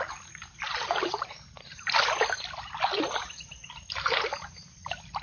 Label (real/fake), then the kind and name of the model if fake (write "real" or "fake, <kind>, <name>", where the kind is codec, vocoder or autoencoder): real